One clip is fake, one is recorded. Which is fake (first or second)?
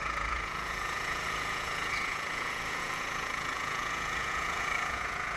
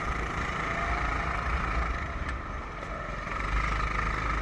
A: first